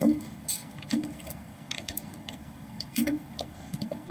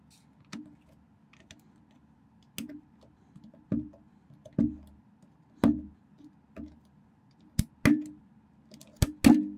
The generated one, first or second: first